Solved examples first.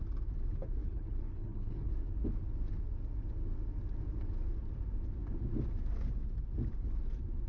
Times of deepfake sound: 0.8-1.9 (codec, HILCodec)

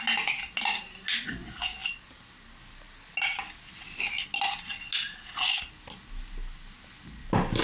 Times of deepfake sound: none

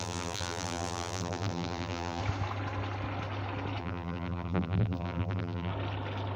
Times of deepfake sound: 0.0-2.2 (vocoder, BigVGAN v2); 3.8-5.7

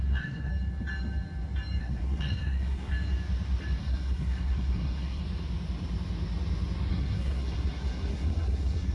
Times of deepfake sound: 0.0-0.5 (codec, SNAC); 1.8-2.9; 3.8-5.2; 6.9-8.9

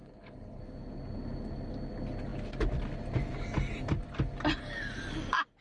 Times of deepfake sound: 0.0-0.6 (codec, HILCodec)